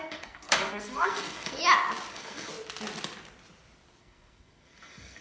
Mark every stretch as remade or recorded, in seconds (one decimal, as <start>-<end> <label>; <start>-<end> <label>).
0.0-1.6 remade; 1.6-2.1 recorded; 2.1-2.5 remade; 2.5-4.0 recorded; 4.0-5.2 remade